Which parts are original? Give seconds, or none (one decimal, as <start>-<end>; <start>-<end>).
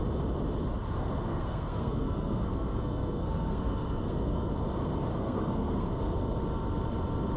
0.0-1.3; 4.5-5.1; 6.0-7.4